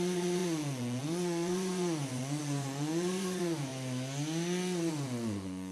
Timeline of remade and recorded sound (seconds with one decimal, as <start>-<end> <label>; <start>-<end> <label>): 0.0-3.7 remade; 3.7-4.9 recorded; 4.9-5.7 remade